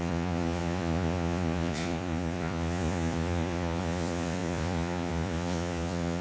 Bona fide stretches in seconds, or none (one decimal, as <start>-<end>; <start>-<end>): none